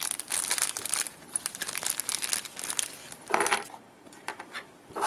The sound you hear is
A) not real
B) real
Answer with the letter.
B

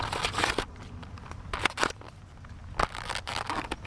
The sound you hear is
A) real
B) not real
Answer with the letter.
A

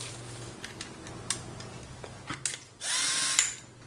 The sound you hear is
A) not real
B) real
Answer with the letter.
B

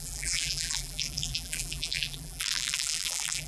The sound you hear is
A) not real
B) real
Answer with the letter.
A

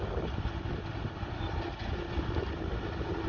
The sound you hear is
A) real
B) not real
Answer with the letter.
A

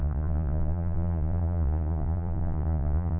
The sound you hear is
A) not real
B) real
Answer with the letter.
A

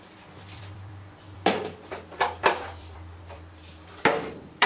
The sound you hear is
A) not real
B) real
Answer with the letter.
A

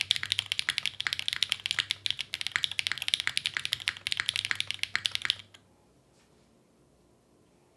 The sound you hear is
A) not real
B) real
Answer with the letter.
B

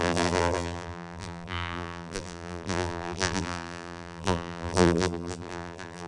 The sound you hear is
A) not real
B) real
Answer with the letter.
A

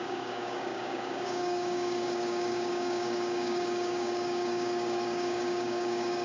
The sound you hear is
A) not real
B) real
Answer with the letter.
A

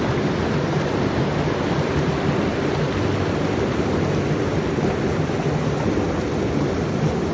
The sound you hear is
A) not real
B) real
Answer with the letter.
B